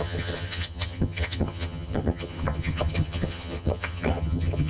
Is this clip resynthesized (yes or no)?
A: yes